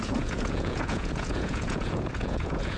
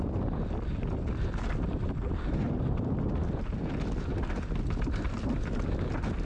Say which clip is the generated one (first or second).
first